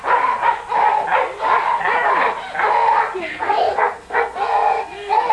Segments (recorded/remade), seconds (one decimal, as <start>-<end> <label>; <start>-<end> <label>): 0.0-3.3 recorded; 3.3-5.3 remade